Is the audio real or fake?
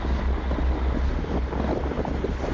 real